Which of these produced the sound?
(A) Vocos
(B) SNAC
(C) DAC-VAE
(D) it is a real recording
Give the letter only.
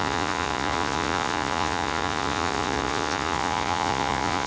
A